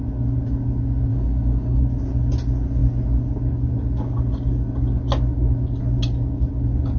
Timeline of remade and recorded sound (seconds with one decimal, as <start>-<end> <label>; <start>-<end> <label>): 0.0-1.1 recorded; 1.1-1.8 remade; 1.8-7.0 recorded